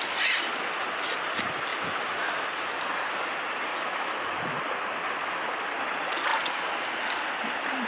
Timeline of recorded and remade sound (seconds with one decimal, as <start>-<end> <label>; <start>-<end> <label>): 0.0-3.7 recorded; 3.7-4.4 remade; 4.4-7.9 recorded

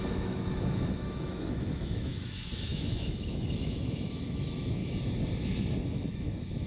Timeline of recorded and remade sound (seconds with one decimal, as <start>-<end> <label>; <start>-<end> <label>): 0.0-4.8 remade; 4.8-5.8 recorded; 5.8-6.7 remade

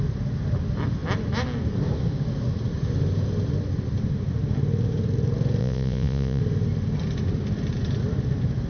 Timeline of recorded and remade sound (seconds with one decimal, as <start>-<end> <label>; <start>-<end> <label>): 0.0-5.6 recorded; 5.6-6.4 remade; 6.4-8.7 recorded

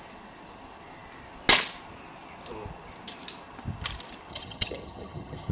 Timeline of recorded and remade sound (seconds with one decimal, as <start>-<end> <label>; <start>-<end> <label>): 0.0-4.3 recorded; 4.3-5.5 remade